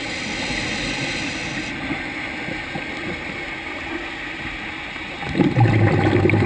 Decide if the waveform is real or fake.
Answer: real